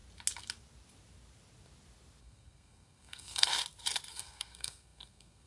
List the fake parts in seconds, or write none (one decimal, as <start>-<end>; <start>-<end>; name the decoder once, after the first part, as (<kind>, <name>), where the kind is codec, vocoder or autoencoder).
2.2-3.5 (codec, SNAC); 4.1-5.5